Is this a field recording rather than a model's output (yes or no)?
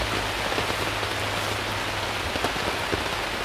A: yes